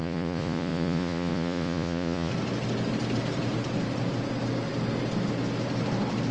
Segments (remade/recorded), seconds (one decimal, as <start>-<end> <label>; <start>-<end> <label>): 0.0-2.3 remade; 2.3-6.3 recorded